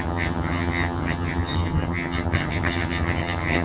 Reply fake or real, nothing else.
fake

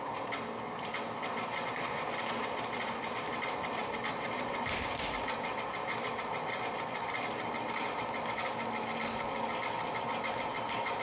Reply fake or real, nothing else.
real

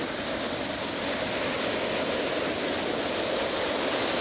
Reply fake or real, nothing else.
real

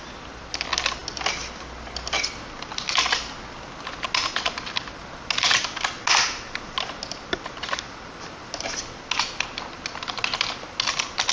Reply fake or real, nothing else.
real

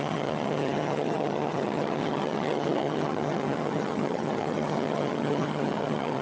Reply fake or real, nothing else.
fake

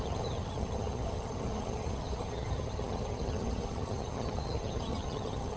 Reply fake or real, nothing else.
fake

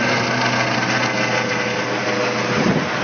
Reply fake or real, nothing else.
real